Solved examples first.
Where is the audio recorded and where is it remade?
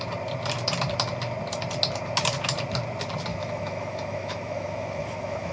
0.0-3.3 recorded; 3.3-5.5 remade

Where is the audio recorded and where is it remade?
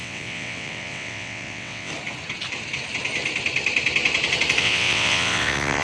0.0-1.9 remade; 1.9-4.6 recorded; 4.6-5.8 remade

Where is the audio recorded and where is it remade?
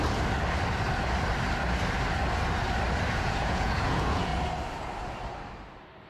0.0-3.1 recorded; 3.1-4.3 remade; 4.3-6.1 recorded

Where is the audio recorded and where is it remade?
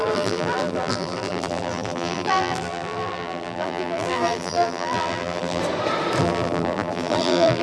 0.0-5.6 remade; 5.6-6.2 recorded; 6.2-7.6 remade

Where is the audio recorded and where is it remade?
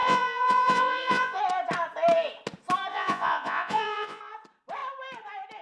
0.0-1.4 remade; 1.4-2.9 recorded; 2.9-4.2 remade; 4.2-5.6 recorded